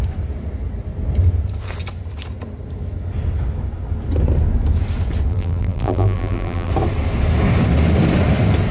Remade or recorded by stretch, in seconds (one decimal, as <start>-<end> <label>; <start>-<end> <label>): 0.0-5.3 recorded; 5.3-6.7 remade; 6.7-8.7 recorded